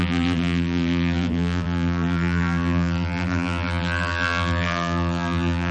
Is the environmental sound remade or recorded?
remade